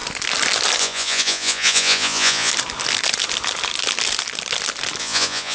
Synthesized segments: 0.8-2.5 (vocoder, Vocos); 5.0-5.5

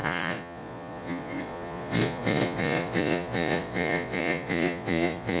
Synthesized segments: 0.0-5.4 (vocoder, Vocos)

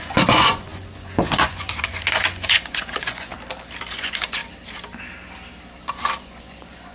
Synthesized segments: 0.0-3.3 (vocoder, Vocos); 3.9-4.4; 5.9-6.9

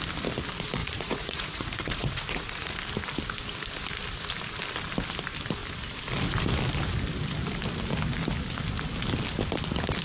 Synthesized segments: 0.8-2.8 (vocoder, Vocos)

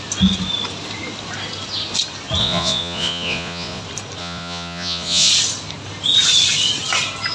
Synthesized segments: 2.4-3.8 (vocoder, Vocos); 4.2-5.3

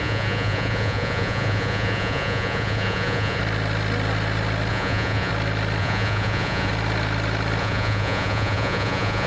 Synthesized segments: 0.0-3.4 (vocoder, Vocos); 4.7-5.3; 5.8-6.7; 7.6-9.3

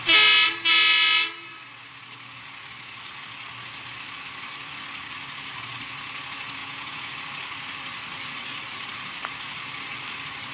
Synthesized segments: 6.6-7.1 (vocoder, Vocos)